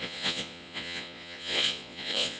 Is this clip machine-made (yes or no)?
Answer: yes